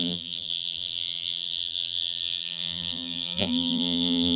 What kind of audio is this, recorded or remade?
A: remade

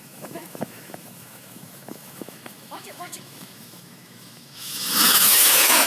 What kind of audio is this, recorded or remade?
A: remade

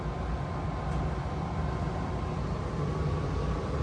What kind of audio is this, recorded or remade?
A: recorded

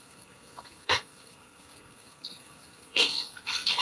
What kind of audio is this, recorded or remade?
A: remade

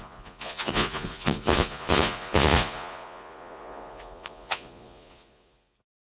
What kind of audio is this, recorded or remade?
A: remade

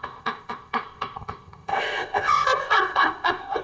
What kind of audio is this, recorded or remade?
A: remade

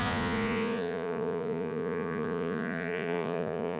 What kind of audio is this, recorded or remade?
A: remade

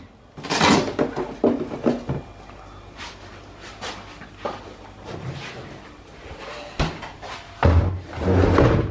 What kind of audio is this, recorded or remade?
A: recorded